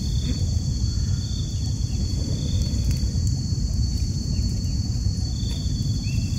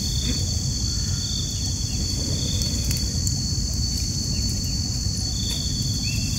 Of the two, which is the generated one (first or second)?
first